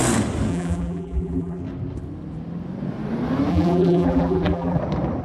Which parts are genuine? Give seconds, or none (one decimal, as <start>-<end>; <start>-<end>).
0.0-0.5; 1.6-3.5; 4.8-5.2